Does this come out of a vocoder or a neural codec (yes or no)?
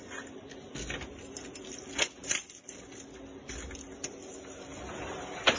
no